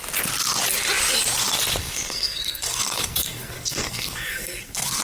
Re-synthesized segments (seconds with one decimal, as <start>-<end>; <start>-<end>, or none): 1.8-5.0